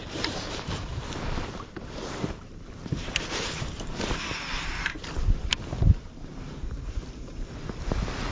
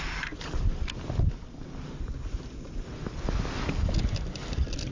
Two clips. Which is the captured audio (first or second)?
second